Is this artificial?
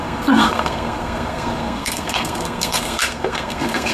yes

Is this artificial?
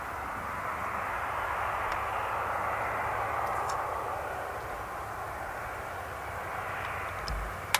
no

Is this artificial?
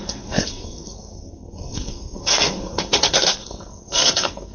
yes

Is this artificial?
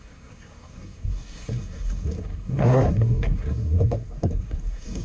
yes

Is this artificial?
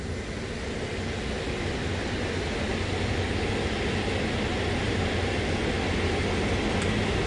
no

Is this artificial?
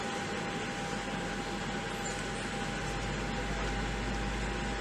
no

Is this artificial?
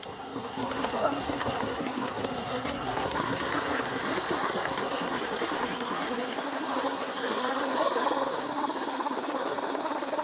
yes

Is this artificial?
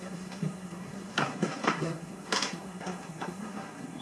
yes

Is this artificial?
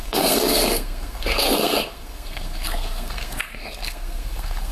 yes